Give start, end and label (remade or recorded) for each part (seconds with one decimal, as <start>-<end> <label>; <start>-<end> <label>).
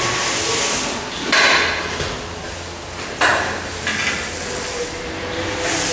0.0-5.9 recorded